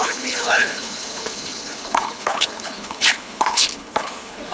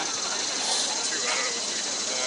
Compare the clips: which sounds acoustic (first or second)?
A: second